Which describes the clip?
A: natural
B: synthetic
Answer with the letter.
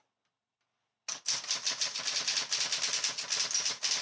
A